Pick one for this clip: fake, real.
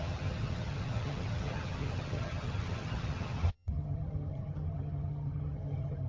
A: fake